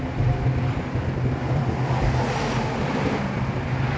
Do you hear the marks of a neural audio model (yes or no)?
no